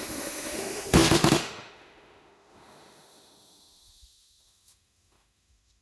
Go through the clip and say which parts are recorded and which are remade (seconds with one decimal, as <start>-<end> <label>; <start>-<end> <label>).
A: 0.0-5.8 remade